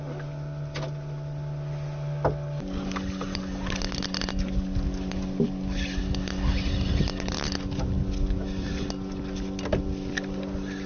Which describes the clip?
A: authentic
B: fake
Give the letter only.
A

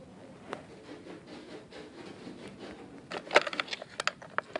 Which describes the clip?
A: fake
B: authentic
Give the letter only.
B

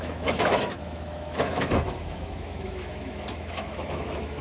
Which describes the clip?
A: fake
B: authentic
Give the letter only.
A